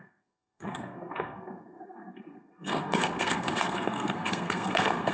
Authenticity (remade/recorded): remade